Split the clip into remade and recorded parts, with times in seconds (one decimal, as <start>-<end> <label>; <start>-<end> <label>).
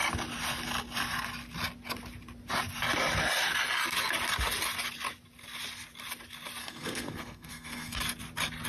0.0-6.6 recorded; 6.6-8.0 remade; 8.0-8.7 recorded